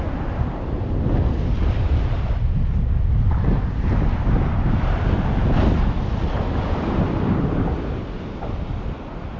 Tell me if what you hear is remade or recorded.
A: recorded